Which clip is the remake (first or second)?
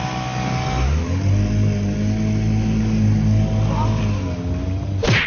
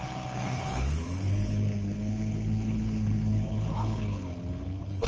second